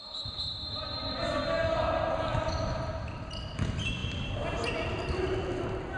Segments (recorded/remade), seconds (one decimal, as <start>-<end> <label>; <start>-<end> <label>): 0.0-6.0 recorded